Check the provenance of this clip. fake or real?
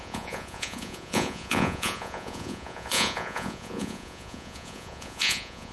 fake